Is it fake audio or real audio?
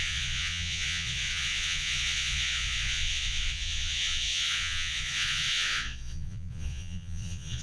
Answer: fake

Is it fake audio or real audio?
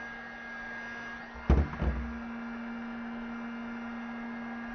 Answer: real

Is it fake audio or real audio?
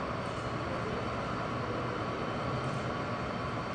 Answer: real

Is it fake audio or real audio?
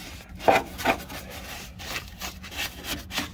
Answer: real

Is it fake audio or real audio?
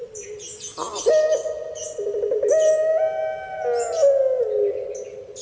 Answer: real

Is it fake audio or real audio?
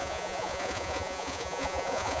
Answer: fake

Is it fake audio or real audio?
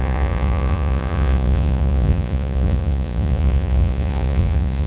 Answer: fake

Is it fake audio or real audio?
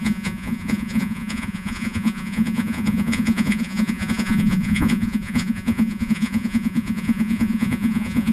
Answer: fake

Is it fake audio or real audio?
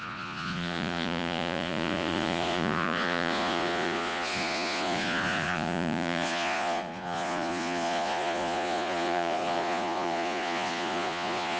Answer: fake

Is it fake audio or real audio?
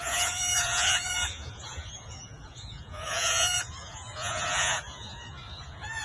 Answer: fake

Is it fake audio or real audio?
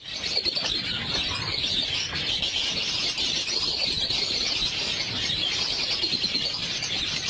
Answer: real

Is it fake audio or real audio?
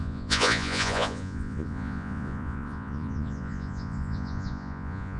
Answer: fake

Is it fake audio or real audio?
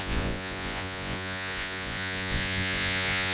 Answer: fake